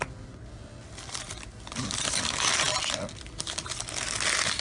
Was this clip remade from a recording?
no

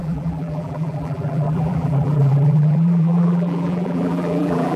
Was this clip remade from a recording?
yes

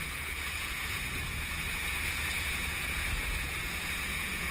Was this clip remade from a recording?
yes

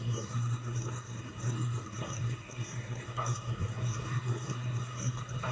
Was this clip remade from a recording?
yes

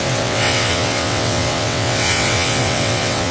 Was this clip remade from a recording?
yes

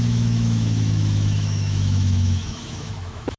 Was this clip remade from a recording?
yes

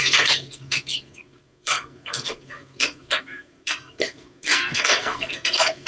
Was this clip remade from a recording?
yes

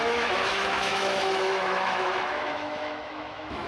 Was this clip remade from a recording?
yes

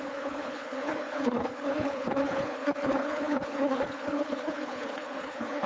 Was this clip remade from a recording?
yes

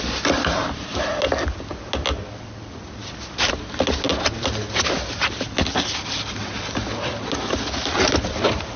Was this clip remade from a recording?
no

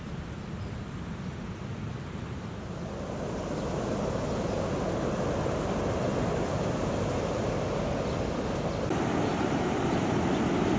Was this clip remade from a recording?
no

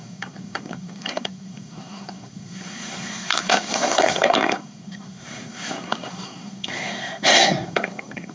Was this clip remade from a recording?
yes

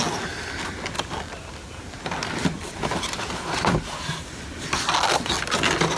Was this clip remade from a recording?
no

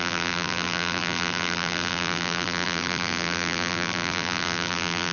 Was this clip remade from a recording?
yes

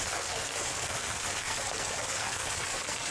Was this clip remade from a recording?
yes